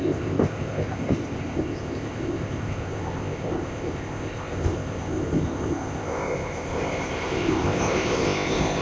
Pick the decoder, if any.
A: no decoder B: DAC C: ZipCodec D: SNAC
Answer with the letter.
C